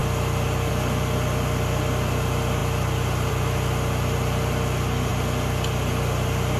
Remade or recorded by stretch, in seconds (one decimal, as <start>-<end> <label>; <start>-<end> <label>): 0.0-6.6 recorded